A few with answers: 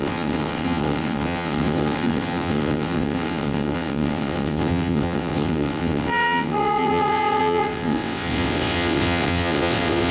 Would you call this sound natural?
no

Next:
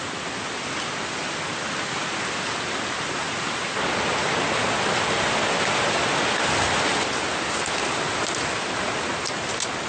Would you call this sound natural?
yes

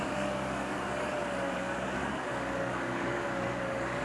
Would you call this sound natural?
no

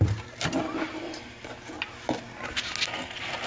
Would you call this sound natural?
yes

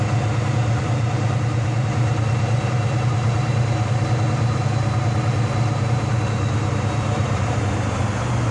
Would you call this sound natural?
no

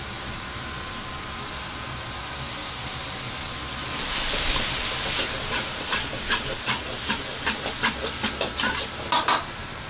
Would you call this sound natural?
no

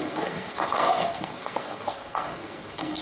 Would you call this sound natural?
no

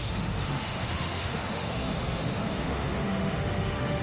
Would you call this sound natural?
no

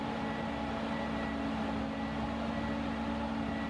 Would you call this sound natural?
yes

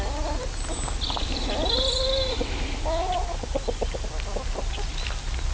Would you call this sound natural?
yes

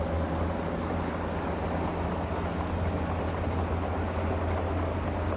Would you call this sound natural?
yes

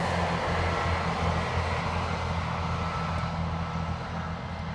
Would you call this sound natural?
yes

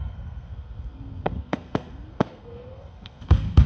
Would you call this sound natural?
no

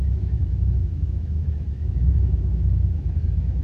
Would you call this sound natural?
no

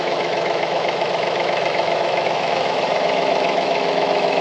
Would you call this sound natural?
no